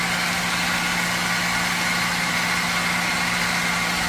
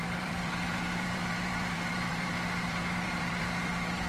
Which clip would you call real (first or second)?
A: first